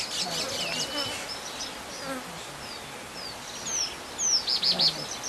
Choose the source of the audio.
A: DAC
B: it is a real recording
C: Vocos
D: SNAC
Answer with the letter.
B